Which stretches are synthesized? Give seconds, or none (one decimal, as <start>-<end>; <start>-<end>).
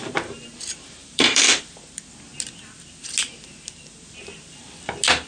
1.0-1.6